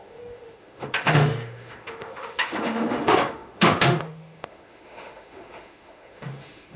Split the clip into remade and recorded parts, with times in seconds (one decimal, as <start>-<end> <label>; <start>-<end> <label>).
0.0-6.8 remade